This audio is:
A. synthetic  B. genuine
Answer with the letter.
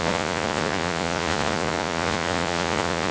A